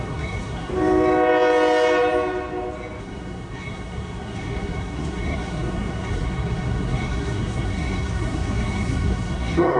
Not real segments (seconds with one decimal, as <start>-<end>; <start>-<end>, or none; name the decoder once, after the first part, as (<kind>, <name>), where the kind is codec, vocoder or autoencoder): 0.0-0.7 (codec, SNAC); 3.0-9.8